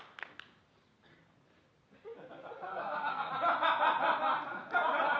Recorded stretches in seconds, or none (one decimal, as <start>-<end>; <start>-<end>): 0.0-2.7; 3.3-5.2